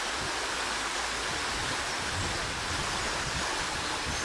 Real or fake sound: real